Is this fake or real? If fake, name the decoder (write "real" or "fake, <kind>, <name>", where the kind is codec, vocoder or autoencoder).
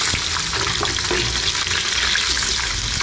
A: real